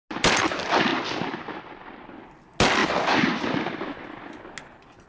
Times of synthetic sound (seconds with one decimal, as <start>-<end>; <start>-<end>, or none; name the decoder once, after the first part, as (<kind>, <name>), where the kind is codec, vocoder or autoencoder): none